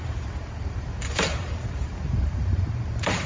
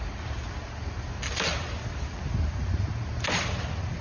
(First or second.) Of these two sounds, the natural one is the second